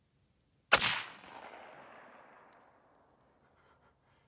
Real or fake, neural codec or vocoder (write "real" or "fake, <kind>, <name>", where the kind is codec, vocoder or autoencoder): real